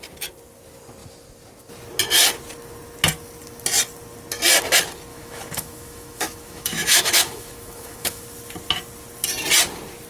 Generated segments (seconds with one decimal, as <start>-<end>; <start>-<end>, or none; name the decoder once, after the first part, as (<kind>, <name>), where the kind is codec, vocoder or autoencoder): 5.1-8.2 (autoencoder, DAC-VAE)